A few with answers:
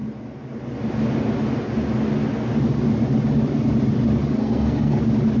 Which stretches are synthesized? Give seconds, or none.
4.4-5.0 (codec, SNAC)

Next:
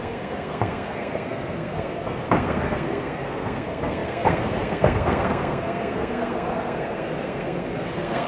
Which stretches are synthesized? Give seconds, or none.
0.0-8.3 (codec, SNAC)

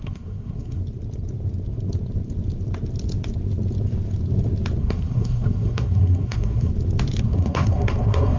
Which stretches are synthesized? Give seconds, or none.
0.0-0.8 (codec, SNAC); 4.8-6.7; 7.2-8.4

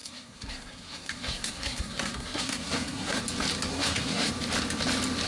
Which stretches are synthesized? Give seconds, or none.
0.0-3.2 (codec, SNAC); 3.7-4.3